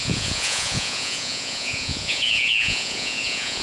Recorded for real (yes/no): no